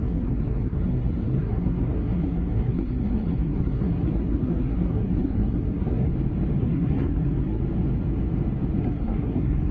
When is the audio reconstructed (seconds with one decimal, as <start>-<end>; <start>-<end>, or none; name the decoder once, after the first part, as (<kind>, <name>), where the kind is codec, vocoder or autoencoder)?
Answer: 0.0-6.1 (codec, SNAC); 6.6-7.6; 8.8-9.7